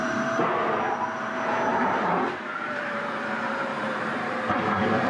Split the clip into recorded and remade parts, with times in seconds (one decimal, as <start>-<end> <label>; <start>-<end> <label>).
0.0-1.7 recorded; 1.7-5.1 remade